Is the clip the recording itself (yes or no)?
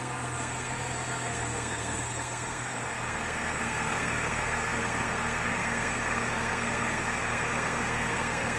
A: no